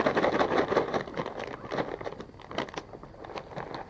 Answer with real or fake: real